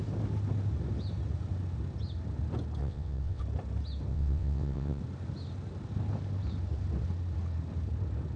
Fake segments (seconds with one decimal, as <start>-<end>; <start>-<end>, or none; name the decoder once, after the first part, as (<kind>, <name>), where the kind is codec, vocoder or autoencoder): 2.8-3.4 (vocoder, WaveNeXt); 4.1-5.0